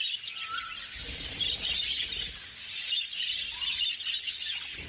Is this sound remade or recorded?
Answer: recorded